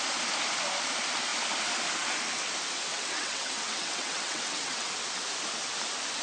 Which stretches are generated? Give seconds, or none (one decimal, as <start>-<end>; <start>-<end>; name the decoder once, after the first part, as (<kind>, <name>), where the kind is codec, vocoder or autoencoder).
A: 2.9-4.9 (vocoder, WaveNeXt)